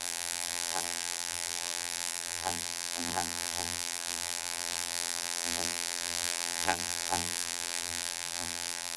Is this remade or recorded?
remade